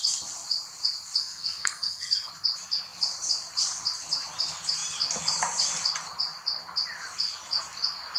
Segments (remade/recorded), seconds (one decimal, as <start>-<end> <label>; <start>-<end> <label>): 0.0-1.2 recorded; 1.2-2.3 remade; 2.3-8.2 recorded